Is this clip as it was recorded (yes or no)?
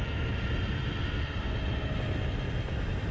yes